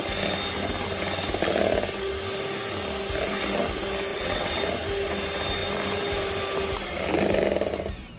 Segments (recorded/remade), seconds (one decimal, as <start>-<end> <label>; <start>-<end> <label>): 0.0-4.1 recorded; 4.1-4.6 remade; 4.6-8.2 recorded